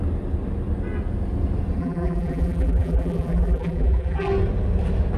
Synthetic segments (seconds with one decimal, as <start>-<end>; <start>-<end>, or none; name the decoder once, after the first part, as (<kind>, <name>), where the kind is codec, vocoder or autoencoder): 1.8-4.3 (vocoder, BigVGAN v2)